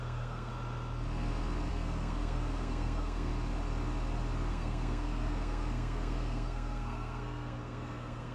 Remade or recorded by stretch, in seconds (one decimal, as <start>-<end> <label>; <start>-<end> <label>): 0.0-0.5 remade; 0.5-1.7 recorded; 1.7-3.3 remade; 3.3-4.5 recorded; 4.5-8.3 remade